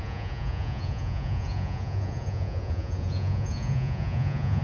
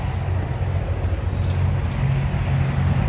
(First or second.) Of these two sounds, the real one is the second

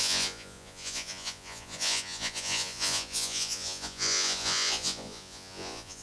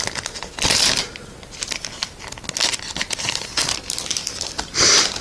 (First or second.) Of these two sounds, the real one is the second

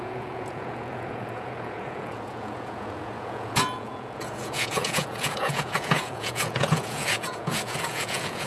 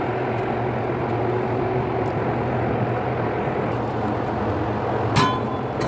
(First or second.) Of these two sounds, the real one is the second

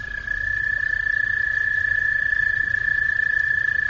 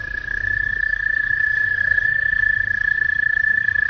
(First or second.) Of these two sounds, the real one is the first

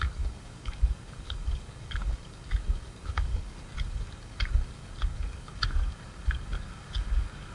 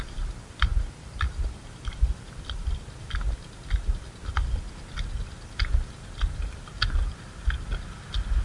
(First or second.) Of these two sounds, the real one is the second